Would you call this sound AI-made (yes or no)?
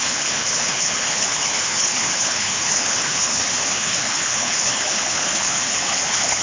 yes